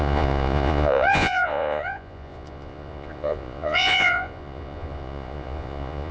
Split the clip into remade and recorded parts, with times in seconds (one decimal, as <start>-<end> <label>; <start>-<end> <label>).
0.0-6.1 remade